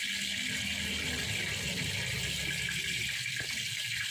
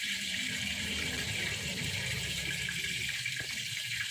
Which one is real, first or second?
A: first